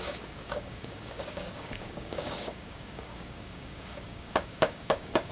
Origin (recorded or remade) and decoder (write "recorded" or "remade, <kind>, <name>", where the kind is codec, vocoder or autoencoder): remade, codec, DAC